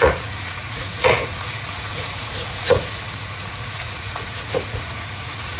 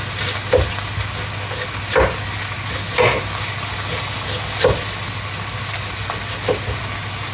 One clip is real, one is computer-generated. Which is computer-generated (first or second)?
first